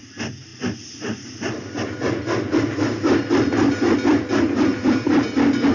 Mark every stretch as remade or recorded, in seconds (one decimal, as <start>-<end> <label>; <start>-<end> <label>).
0.0-5.7 recorded